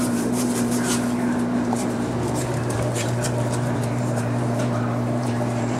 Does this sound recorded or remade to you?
remade